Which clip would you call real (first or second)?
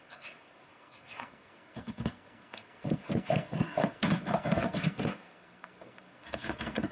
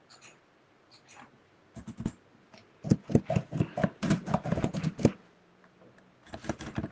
second